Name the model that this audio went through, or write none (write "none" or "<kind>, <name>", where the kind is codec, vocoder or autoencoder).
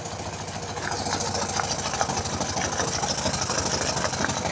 none